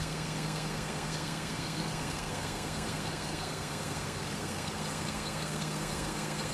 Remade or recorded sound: remade